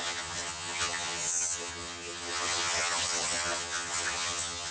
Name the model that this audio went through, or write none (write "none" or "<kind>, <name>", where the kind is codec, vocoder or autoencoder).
vocoder, HiFi-GAN